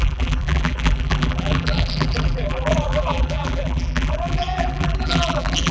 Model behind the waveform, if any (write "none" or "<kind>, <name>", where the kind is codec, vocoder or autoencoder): vocoder, BigVGAN v2